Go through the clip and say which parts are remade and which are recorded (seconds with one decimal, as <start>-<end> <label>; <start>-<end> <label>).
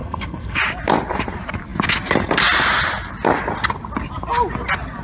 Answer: 0.0-0.6 remade; 0.6-5.0 recorded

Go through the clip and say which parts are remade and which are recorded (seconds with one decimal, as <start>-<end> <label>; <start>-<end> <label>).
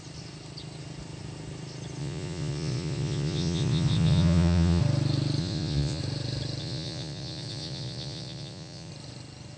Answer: 0.0-2.0 recorded; 2.0-4.8 remade; 4.8-5.4 recorded; 5.4-6.0 remade; 6.0-6.6 recorded; 6.6-8.9 remade; 8.9-9.6 recorded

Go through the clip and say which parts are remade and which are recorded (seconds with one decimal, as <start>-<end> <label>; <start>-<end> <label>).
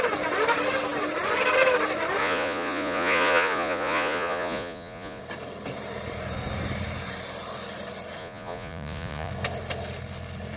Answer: 0.0-2.2 recorded; 2.2-5.2 remade; 5.2-8.2 recorded; 8.2-9.3 remade; 9.3-10.6 recorded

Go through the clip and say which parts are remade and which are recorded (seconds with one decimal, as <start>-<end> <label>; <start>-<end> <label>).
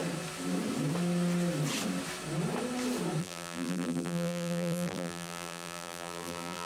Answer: 0.0-3.2 recorded; 3.2-6.7 remade